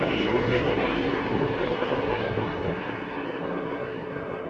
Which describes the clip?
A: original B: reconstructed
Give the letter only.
B